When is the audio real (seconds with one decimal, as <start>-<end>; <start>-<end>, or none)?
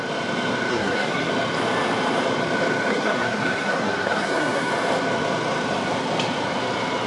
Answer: 0.0-0.7; 1.3-2.9; 4.7-7.1